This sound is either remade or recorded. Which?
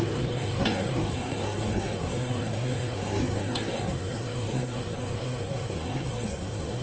remade